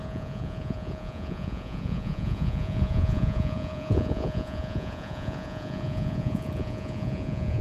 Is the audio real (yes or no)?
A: no